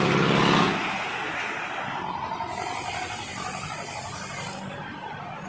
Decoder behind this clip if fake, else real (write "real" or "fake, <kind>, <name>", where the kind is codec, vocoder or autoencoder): real